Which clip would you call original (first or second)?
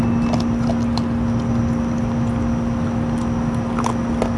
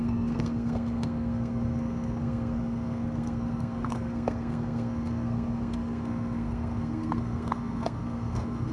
first